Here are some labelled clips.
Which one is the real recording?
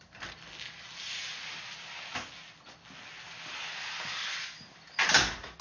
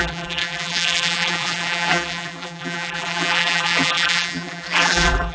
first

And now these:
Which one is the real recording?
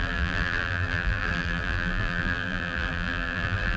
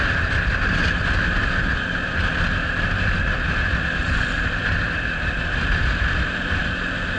second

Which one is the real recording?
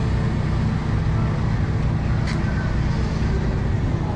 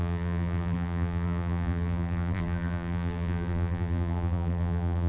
first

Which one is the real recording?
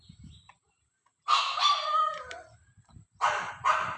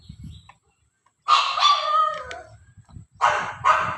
second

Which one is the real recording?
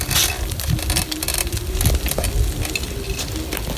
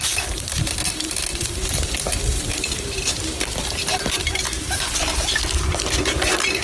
first